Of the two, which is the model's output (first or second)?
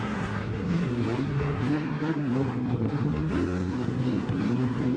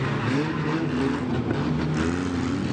first